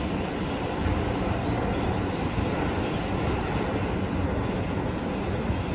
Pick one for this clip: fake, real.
real